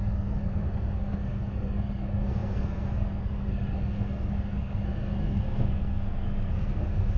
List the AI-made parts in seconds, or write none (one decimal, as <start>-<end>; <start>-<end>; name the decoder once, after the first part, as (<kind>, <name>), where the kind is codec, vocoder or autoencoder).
0.0-7.2 (codec, SNAC)